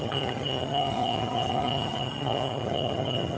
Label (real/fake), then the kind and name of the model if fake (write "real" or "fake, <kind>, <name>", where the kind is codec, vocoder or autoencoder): fake, vocoder, HiFi-GAN